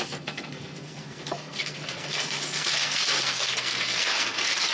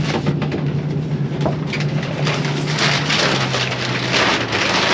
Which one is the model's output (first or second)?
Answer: first